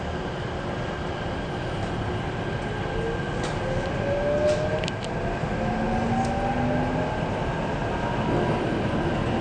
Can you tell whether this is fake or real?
real